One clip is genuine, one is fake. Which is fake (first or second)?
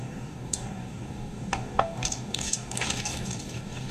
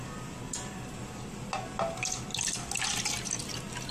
first